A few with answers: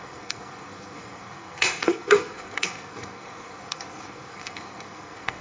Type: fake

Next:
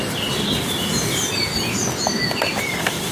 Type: real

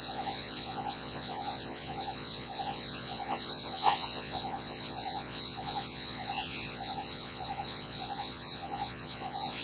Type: fake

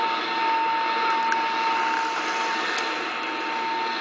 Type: real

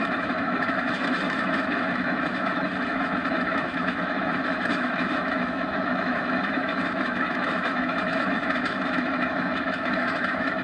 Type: fake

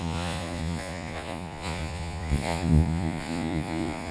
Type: fake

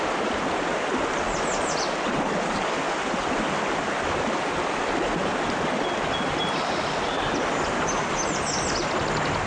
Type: real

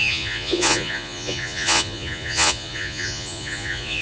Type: fake